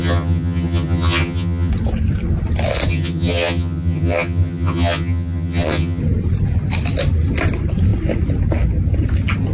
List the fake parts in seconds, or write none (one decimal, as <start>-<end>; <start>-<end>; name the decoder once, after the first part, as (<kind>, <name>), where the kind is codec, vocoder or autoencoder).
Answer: 0.0-1.7 (vocoder, HiFi-GAN); 2.9-6.0